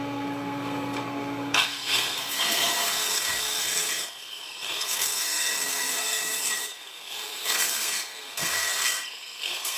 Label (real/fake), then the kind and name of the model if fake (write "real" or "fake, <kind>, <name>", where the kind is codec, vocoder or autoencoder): fake, codec, SNAC